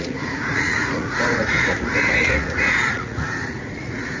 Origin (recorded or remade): remade